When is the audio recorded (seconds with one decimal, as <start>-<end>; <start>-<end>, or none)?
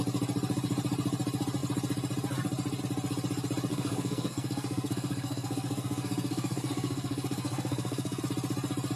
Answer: 0.0-3.7; 8.2-9.0